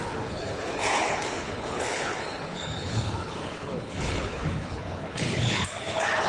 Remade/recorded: remade